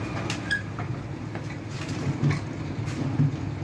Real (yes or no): yes